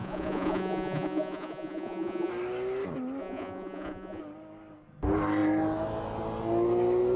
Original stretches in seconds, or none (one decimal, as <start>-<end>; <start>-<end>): 2.3-3.2; 4.2-7.2